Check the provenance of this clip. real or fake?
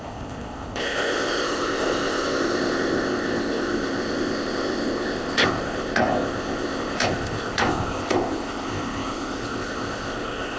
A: fake